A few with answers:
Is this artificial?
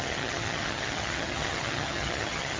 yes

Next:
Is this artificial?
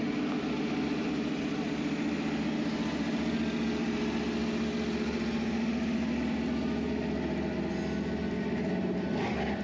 no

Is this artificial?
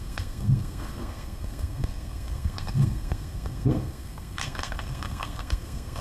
yes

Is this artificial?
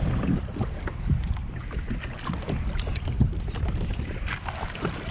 no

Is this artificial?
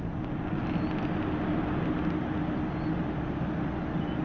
no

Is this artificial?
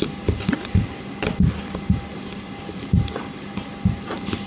no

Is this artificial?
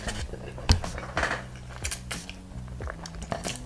no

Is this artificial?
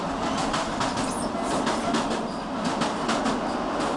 no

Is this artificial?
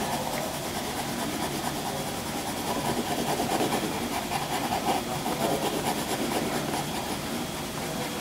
yes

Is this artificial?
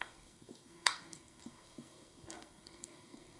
yes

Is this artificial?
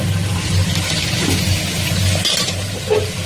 no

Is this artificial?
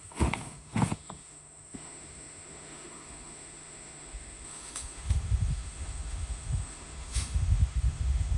yes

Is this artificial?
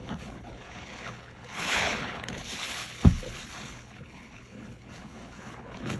yes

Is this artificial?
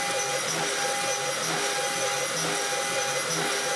no